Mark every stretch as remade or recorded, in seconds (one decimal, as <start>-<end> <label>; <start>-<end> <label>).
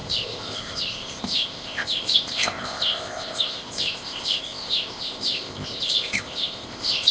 0.0-7.1 remade